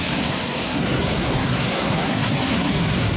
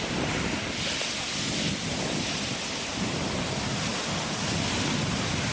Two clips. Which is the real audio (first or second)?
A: second